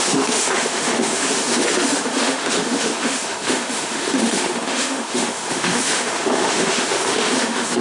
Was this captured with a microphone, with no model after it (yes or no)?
no